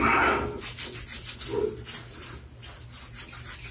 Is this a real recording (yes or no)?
yes